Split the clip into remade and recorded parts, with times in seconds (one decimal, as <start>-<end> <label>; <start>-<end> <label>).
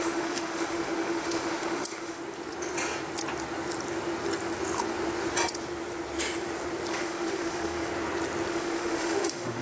0.0-2.2 remade; 2.2-6.9 recorded; 6.9-7.9 remade; 7.9-8.5 recorded; 8.5-9.6 remade